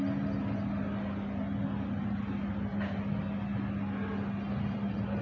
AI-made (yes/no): no